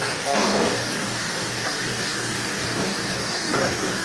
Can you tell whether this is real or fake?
fake